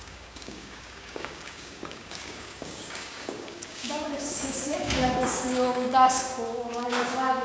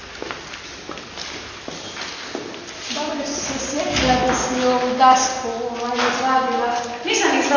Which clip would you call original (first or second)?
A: second